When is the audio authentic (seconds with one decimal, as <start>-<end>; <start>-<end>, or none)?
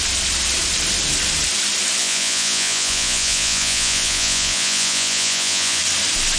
0.0-2.0; 5.8-6.4